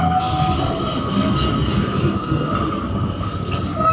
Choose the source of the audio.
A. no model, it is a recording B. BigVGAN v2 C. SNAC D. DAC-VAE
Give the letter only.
C